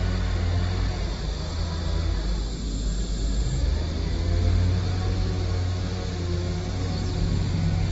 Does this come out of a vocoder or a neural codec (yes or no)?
no